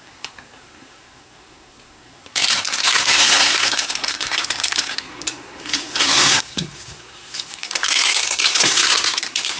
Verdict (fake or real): fake